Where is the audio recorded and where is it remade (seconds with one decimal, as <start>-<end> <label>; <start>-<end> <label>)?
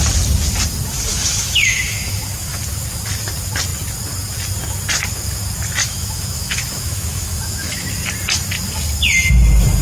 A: 0.0-1.1 recorded; 1.1-2.6 remade; 2.6-5.8 recorded; 5.8-7.9 remade; 7.9-9.8 recorded